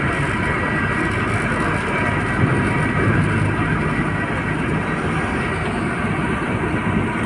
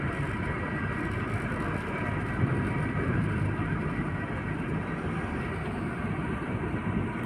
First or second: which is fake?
second